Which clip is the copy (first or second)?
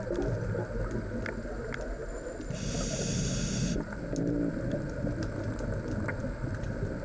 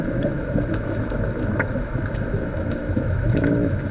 second